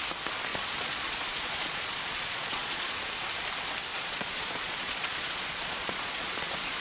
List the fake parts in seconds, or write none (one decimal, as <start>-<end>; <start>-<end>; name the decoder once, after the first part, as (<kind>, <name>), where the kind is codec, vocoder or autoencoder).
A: 0.5-3.1 (vocoder, Vocos); 3.9-6.8

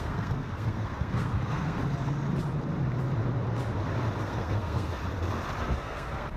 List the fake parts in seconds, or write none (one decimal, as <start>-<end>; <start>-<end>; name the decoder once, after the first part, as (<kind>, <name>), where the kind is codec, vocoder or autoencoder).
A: 0.0-1.8 (codec, SNAC); 4.2-5.0; 5.6-6.4

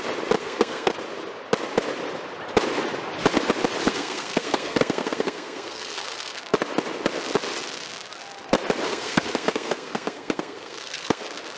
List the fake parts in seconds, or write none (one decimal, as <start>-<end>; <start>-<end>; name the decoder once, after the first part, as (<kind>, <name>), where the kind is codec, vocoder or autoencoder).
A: 0.4-1.0 (codec, SNAC); 3.9-6.4; 8.9-11.2

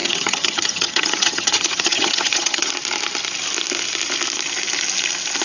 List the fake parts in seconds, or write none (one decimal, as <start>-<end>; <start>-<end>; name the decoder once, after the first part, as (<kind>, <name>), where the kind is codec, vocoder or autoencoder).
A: 0.0-2.7 (vocoder, HiFi-GAN)

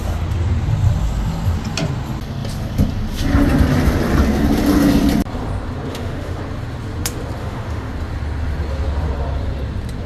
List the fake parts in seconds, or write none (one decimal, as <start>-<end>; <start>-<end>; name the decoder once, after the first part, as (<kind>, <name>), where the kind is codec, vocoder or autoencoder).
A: 5.9-6.4 (autoencoder, DAC-VAE); 7.4-7.9

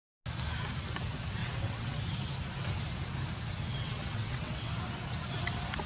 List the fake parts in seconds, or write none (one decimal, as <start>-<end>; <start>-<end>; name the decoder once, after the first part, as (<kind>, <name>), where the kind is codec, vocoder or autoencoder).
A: 1.4-2.0 (vocoder, WaveNeXt); 3.7-4.7

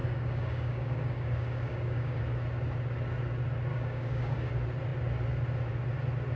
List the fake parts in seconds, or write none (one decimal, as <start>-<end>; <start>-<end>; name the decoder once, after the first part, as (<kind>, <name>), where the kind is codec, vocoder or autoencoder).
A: 0.0-2.2 (codec, DAC); 3.7-4.5